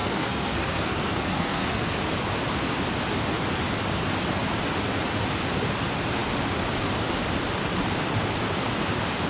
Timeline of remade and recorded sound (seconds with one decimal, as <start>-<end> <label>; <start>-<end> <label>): 0.0-1.9 remade; 1.9-9.3 recorded